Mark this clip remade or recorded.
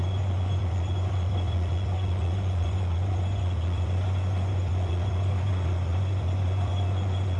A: remade